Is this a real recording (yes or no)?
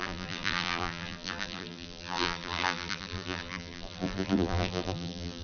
no